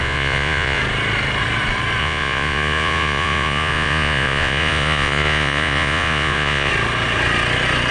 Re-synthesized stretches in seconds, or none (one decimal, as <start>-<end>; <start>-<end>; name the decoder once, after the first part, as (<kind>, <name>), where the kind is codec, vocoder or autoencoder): 0.0-0.8 (vocoder, Vocos); 2.0-6.7